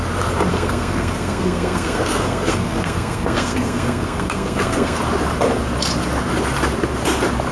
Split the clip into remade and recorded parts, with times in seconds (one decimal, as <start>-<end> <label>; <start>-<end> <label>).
0.0-0.5 recorded; 0.5-5.0 remade; 5.0-7.5 recorded